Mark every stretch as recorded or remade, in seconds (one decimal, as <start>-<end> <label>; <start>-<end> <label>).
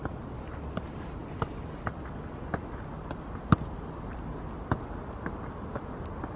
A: 0.0-6.4 recorded